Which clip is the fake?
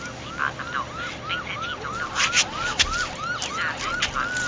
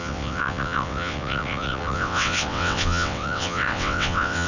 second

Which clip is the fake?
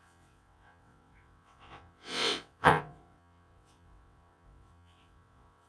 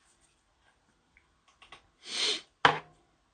first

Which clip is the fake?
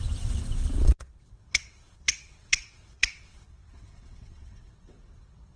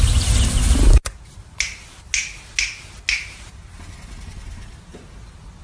first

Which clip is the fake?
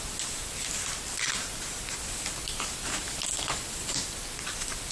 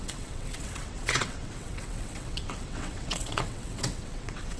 second